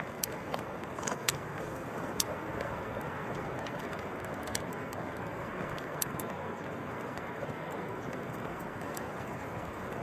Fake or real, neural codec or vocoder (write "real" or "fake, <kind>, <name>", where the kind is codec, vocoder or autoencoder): fake, codec, SNAC